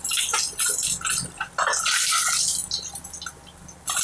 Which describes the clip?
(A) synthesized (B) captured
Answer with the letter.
B